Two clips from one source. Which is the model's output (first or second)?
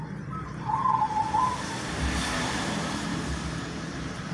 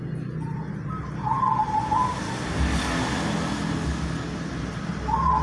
first